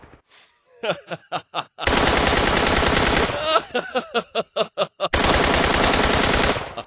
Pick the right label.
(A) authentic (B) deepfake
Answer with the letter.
A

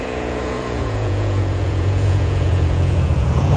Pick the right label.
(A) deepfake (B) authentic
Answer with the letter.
A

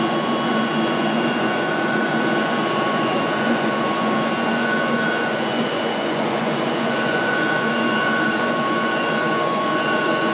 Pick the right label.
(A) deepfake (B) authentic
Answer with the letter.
A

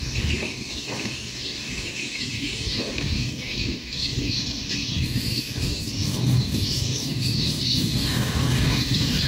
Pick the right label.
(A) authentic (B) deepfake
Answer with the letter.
B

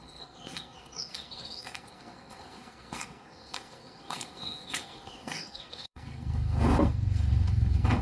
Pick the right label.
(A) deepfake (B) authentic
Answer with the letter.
A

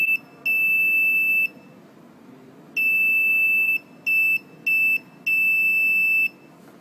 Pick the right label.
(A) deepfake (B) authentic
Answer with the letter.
B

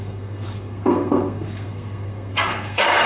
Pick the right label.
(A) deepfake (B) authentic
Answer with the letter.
A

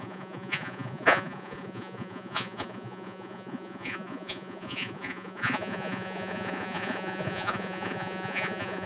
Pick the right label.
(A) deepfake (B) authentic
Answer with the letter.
A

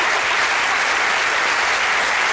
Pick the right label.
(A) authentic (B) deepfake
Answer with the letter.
A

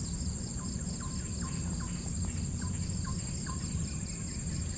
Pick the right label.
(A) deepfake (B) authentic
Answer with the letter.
B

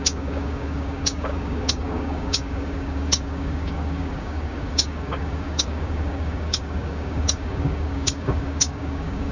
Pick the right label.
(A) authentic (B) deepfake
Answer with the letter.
B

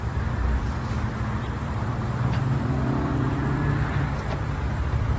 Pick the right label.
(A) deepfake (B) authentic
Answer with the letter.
A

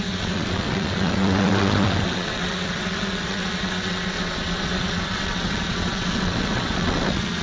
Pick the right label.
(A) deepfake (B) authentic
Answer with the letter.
A